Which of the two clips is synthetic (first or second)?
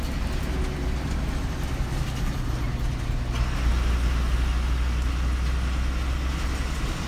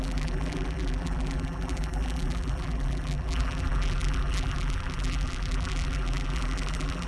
second